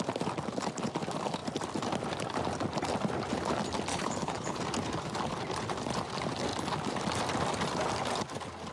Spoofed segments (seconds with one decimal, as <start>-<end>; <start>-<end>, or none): 3.9-4.6